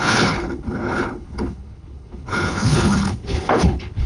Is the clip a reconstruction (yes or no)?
yes